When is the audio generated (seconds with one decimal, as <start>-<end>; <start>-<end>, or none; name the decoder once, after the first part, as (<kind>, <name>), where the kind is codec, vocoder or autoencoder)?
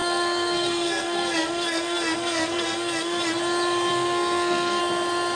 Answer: 0.0-3.2 (codec, SNAC); 3.9-4.8